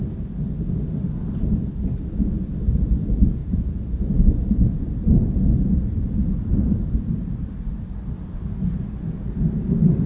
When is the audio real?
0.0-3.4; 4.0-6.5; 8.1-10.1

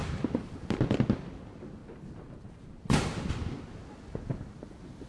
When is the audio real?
0.9-1.8; 3.3-5.1

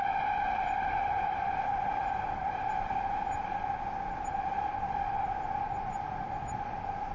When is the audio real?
1.0-7.1

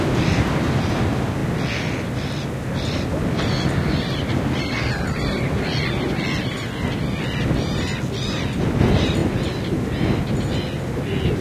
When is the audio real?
0.0-9.2; 10.2-11.4

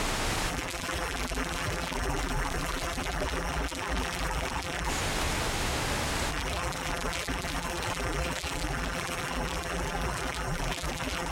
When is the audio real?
0.0-0.5; 4.9-6.3